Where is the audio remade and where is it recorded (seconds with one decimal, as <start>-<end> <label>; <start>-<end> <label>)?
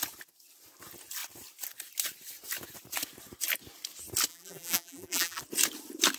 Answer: 0.0-4.3 recorded; 4.3-5.4 remade; 5.4-6.2 recorded